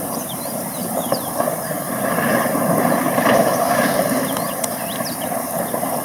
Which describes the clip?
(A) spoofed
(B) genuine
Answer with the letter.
A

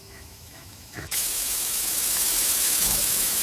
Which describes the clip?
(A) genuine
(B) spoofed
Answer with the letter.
B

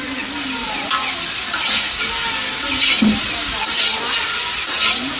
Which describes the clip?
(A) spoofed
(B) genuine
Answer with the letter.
B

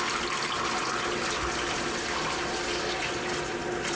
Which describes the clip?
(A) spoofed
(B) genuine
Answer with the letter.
B